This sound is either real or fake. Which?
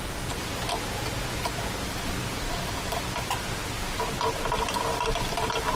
real